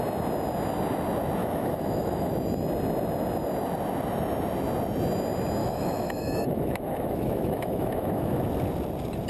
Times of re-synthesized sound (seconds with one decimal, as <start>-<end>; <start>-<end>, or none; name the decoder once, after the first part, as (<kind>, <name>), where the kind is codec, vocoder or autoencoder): 1.4-2.3 (autoencoder, DAC-VAE); 5.6-8.4